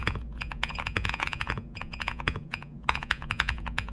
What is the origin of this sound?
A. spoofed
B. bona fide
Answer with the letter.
A